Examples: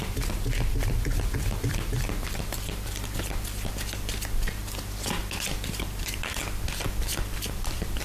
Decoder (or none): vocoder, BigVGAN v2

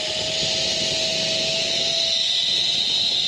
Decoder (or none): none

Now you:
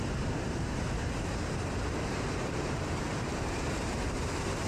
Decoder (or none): vocoder, BigVGAN v2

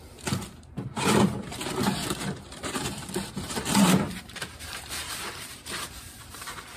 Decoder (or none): vocoder, BigVGAN v2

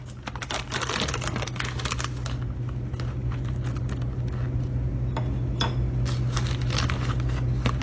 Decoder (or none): none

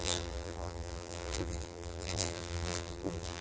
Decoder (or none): vocoder, BigVGAN v2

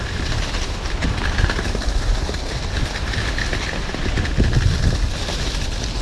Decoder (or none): none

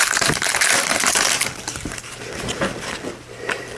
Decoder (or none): vocoder, BigVGAN v2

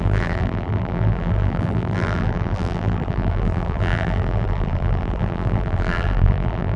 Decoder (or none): vocoder, BigVGAN v2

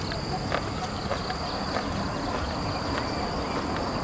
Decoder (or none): none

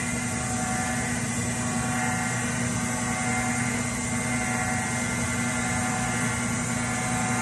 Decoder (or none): none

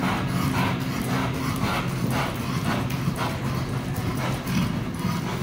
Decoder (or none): none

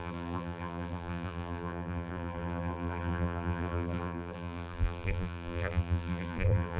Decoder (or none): vocoder, BigVGAN v2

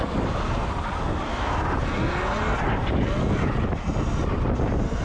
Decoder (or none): none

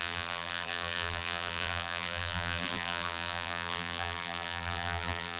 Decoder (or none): vocoder, BigVGAN v2